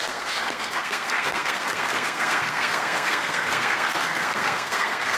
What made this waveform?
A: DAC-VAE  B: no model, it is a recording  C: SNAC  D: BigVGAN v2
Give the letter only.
C